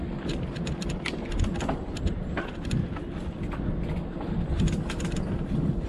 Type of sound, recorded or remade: recorded